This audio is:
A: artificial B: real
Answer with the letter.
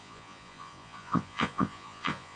A